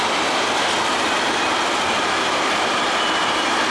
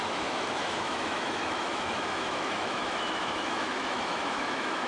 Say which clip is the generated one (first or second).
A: second